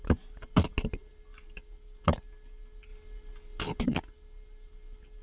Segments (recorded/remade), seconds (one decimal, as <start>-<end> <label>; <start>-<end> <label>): 0.0-5.2 recorded

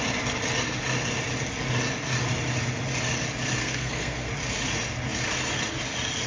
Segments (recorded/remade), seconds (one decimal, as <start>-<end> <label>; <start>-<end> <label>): 0.0-3.6 recorded; 3.6-4.3 remade; 4.3-6.3 recorded